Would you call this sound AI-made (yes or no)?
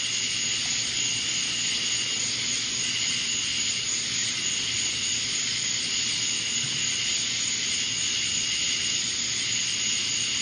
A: no